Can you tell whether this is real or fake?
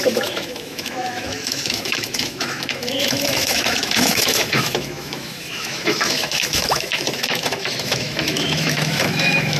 fake